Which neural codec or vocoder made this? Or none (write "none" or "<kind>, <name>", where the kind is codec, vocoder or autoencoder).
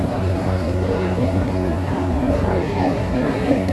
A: codec, SNAC